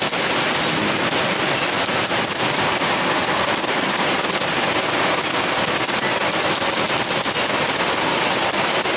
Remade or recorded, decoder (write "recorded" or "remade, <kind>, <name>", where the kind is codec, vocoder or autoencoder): recorded